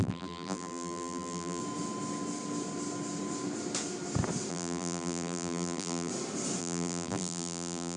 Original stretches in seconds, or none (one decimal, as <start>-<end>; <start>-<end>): 1.6-4.5; 6.1-6.6